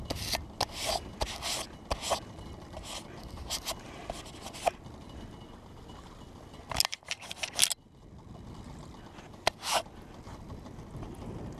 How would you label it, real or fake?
real